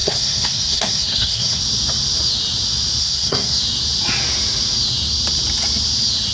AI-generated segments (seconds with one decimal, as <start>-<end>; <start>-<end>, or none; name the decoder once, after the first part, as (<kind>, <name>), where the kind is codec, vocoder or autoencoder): 0.0-1.6 (codec, SNAC); 3.0-3.6